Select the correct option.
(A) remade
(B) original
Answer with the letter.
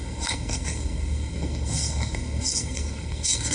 A